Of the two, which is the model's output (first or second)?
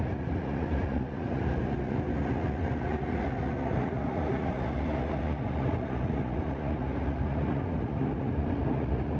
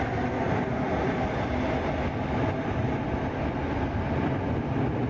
first